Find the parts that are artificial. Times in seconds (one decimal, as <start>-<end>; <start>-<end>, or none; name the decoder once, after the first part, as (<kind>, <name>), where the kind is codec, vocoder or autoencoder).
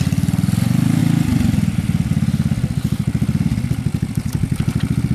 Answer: none